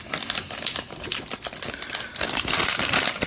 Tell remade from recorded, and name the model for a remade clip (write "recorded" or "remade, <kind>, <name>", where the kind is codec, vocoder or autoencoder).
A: recorded